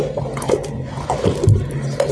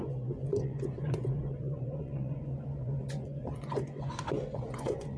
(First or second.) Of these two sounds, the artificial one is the second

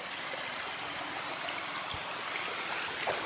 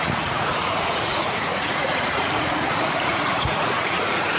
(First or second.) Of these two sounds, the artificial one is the second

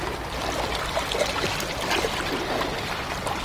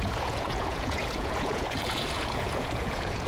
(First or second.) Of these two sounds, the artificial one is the second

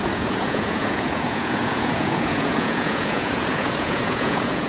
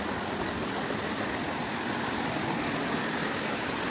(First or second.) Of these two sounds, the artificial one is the first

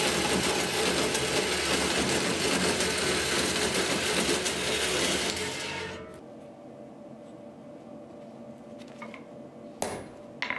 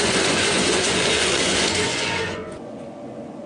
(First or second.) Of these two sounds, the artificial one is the second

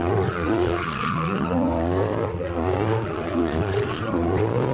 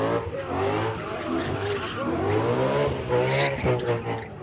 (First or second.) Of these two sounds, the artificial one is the first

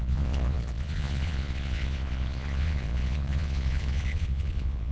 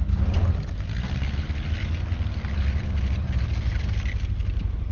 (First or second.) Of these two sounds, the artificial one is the first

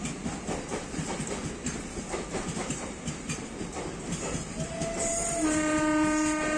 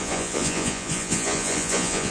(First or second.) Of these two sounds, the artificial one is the second